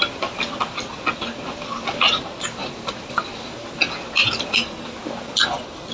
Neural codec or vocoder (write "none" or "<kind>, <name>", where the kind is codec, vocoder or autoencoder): none